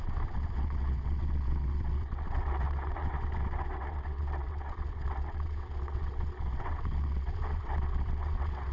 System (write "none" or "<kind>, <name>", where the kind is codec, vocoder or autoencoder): vocoder, WaveNeXt